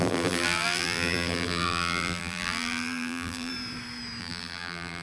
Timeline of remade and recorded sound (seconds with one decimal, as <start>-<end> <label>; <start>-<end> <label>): 0.0-3.5 remade; 3.5-4.2 recorded; 4.2-5.0 remade